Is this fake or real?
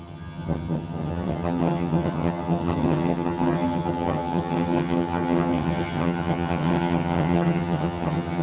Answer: fake